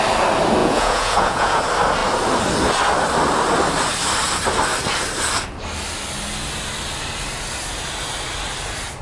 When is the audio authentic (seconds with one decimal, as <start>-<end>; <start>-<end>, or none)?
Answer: 0.0-0.6; 1.6-9.0